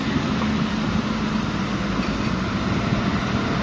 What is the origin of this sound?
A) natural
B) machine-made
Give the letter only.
A